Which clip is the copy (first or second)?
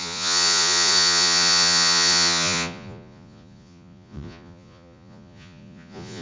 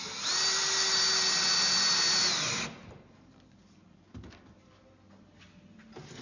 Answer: first